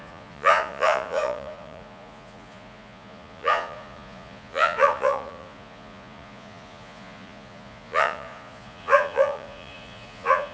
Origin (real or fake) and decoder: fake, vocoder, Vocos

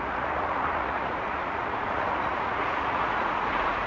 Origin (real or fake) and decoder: fake, vocoder, Vocos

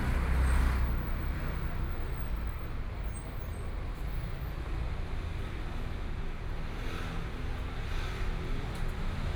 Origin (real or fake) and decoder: real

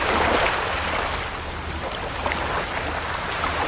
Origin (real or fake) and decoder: real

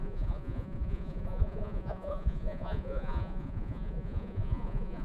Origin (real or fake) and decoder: fake, vocoder, Vocos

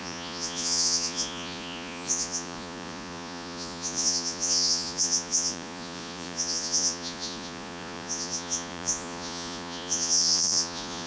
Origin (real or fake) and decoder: fake, vocoder, Vocos